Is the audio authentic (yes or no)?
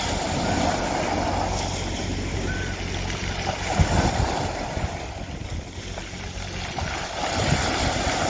yes